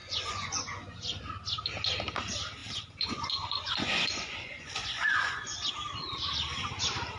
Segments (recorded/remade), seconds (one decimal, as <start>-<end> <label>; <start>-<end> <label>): 0.0-1.2 remade; 1.2-2.6 recorded; 2.6-5.7 remade; 5.7-7.2 recorded